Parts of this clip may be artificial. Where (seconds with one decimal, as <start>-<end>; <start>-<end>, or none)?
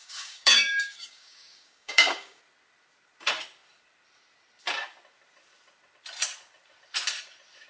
0.0-2.4